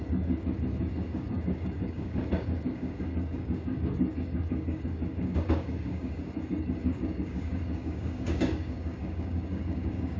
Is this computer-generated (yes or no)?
yes